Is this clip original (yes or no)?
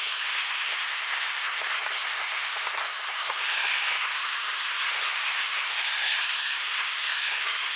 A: no